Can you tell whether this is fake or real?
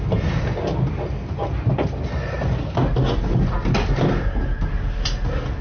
real